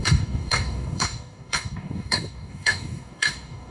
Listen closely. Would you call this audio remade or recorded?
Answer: remade